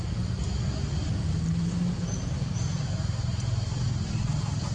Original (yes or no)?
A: yes